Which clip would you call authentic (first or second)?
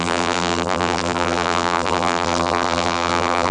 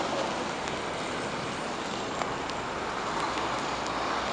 second